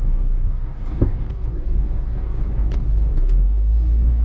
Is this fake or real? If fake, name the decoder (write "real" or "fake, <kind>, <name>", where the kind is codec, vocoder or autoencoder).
fake, codec, DAC